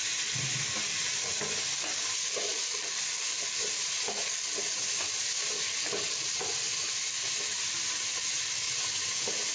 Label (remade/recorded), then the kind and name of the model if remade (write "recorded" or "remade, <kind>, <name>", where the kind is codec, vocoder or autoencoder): recorded